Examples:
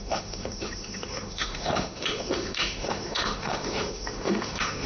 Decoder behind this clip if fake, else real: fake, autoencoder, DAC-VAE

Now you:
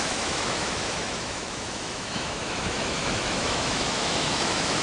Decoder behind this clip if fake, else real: fake, autoencoder, DAC-VAE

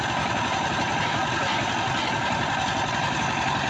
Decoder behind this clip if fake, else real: real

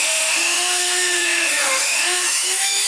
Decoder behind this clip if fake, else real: fake, autoencoder, DAC-VAE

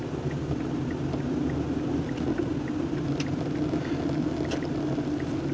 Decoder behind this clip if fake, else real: real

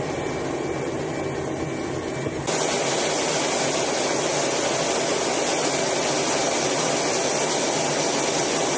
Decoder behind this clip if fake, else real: real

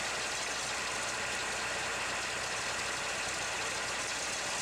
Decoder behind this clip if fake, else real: real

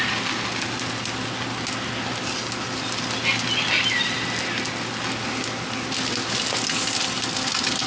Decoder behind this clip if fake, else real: real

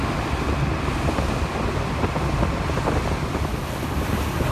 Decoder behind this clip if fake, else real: real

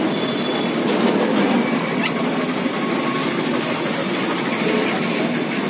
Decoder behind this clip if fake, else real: real